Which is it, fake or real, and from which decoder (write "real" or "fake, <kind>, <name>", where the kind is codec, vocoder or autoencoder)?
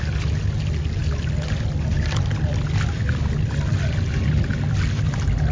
real